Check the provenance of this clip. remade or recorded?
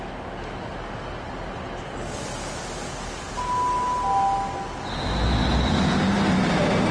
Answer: recorded